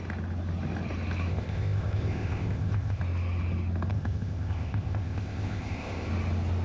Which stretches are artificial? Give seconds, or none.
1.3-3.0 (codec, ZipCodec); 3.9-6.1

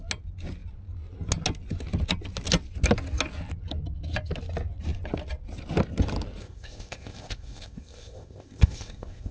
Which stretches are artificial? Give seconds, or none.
6.4-9.3 (codec, ZipCodec)

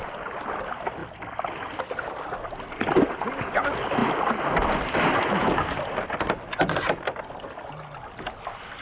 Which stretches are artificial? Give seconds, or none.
none

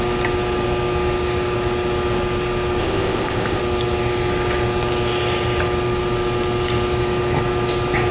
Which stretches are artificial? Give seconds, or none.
2.8-3.6 (codec, ZipCodec)

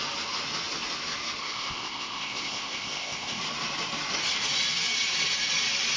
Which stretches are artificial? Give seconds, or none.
1.4-3.4 (codec, ZipCodec)